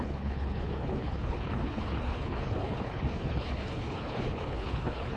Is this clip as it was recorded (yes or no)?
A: no